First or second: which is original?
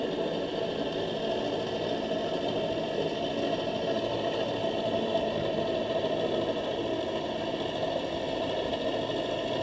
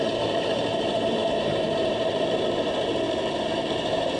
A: first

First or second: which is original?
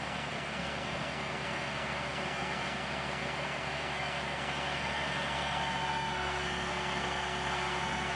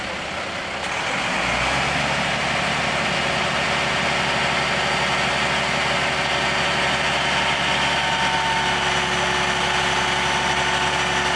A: second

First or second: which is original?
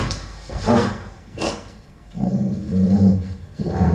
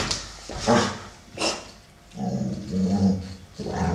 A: second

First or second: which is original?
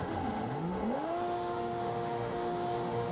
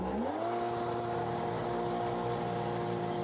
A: second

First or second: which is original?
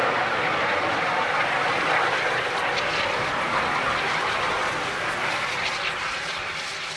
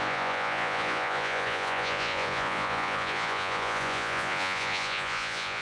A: first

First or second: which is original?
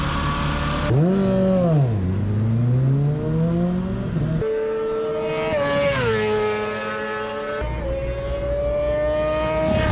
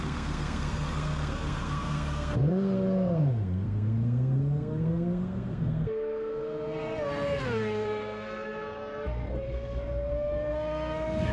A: first